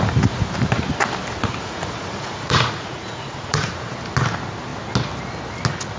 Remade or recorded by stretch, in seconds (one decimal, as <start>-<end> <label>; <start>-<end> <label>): 0.0-1.6 recorded; 1.6-3.9 remade; 3.9-6.0 recorded